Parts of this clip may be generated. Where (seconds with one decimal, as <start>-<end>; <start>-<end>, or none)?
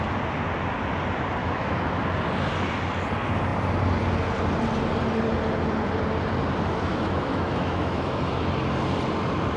1.4-2.0; 6.9-8.2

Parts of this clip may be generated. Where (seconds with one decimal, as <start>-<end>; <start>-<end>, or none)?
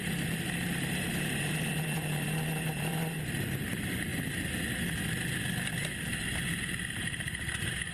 0.0-4.1; 7.0-7.9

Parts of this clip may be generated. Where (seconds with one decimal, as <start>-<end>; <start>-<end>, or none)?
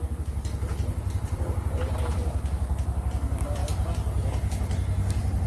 none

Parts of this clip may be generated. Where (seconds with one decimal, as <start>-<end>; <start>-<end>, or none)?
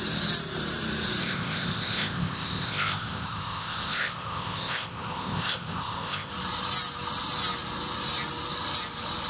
1.2-6.3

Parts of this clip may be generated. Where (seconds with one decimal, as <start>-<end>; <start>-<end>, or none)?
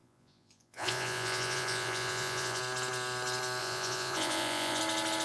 0.0-2.6; 3.6-4.8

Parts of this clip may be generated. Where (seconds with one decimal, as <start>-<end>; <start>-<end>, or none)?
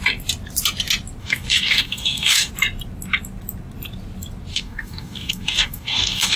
1.2-2.5; 4.5-6.4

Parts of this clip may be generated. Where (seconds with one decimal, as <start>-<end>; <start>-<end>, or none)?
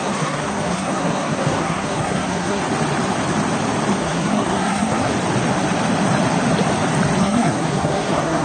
0.0-2.6; 4.0-5.1; 7.2-8.4